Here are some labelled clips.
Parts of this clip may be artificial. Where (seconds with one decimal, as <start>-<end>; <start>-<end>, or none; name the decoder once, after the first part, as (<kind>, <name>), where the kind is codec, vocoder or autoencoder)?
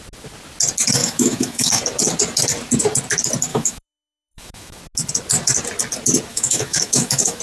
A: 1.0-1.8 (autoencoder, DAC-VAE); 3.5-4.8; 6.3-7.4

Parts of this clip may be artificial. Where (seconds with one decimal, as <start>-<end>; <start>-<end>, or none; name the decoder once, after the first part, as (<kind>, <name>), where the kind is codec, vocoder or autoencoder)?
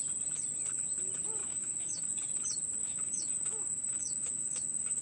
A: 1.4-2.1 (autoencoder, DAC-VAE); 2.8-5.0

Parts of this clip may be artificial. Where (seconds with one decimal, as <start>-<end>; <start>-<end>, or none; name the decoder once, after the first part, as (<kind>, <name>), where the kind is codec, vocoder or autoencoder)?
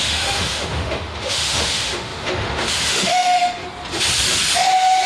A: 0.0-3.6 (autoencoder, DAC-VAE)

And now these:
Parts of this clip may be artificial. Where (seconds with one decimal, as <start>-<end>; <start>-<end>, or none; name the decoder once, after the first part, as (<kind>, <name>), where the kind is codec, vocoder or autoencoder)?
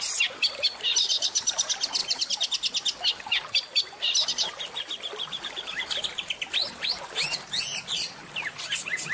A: none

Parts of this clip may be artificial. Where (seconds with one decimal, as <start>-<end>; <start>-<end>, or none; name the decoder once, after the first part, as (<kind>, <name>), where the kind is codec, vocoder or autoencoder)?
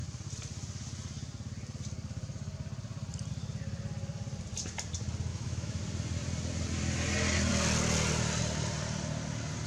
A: 5.3-5.8 (autoencoder, DAC-VAE)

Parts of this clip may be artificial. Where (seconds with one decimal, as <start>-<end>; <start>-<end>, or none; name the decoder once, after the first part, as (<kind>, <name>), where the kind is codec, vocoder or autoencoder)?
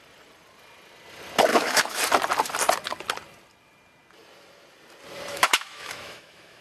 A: 1.5-2.0 (autoencoder, DAC-VAE); 5.3-6.6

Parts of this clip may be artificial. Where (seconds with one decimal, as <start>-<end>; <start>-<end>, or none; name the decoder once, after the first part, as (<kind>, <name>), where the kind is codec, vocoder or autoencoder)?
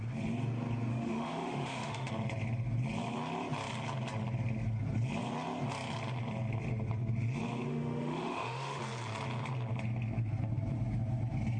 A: 0.9-2.1 (autoencoder, DAC-VAE); 7.7-8.8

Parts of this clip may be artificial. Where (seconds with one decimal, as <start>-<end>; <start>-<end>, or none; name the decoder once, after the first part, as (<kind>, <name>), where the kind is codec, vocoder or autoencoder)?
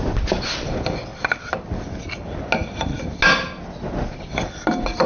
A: none